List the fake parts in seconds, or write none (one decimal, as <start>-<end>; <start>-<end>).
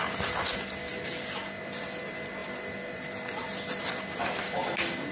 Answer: 2.4-4.4